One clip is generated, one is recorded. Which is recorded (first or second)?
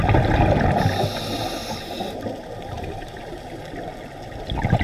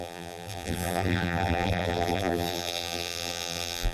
first